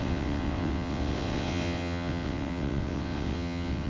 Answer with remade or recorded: remade